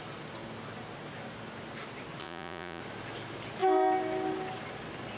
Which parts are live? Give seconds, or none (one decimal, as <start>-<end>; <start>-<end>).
0.0-2.2; 2.8-5.2